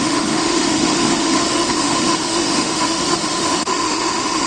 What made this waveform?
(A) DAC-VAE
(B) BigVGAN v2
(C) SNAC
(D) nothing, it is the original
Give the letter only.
A